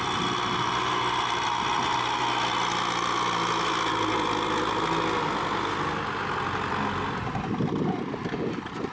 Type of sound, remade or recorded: recorded